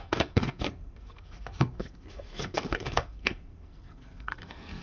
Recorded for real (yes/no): no